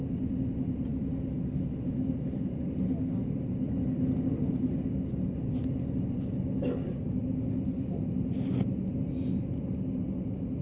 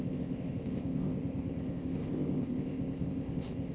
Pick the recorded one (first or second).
first